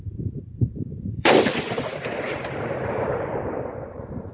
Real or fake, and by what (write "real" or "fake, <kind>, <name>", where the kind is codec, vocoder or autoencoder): fake, vocoder, BigVGAN v2